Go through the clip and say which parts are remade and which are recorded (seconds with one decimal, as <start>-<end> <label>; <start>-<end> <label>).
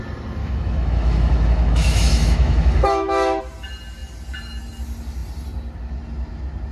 0.0-0.4 recorded; 0.4-3.4 remade; 3.4-6.7 recorded